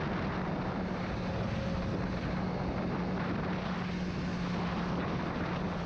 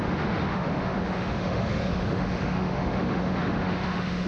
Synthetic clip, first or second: second